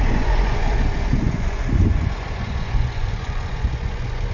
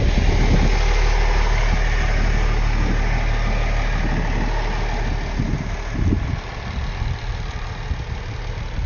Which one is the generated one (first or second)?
first